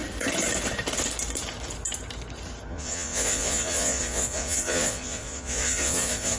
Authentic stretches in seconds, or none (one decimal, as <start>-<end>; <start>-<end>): 0.0-2.7